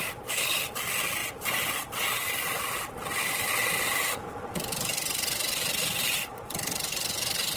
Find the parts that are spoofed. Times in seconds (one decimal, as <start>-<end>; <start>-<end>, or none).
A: none